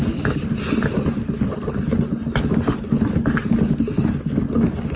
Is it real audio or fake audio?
real